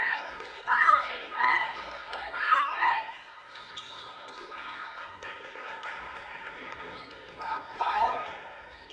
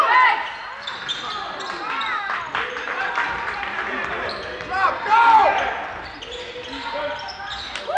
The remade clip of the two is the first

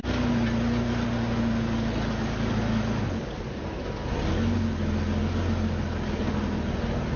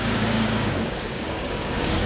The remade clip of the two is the second